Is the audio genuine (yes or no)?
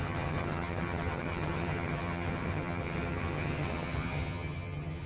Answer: no